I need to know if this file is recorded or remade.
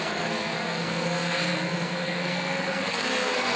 remade